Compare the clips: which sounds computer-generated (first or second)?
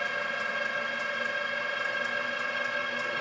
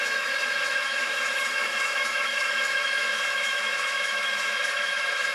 second